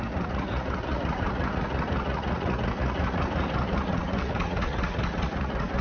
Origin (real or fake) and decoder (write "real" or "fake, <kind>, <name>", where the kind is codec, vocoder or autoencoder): fake, vocoder, Vocos